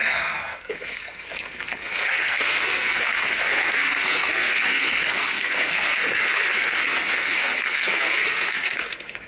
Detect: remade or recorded remade